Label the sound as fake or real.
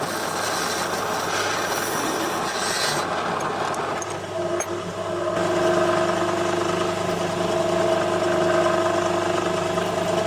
real